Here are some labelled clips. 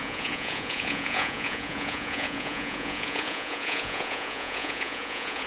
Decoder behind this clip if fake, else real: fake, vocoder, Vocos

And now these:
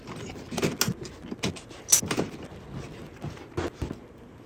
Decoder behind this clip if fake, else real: real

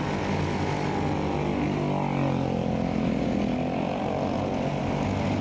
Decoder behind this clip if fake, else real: real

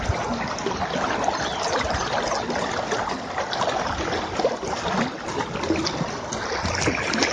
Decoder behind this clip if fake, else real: real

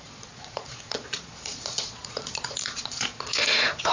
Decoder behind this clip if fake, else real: fake, vocoder, Vocos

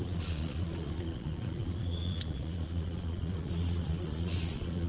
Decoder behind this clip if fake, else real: fake, vocoder, Vocos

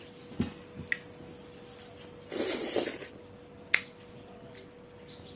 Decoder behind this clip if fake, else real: real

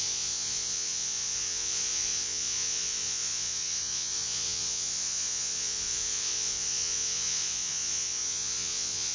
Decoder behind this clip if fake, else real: fake, vocoder, Vocos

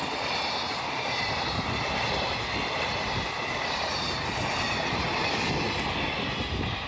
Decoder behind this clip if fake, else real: real